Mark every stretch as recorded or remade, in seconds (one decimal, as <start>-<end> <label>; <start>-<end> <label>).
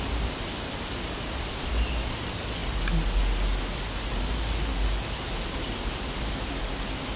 0.0-7.2 recorded